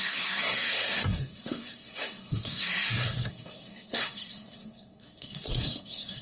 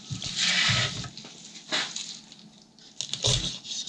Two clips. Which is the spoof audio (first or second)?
first